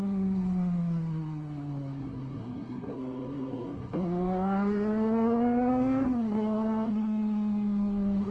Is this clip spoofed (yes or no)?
yes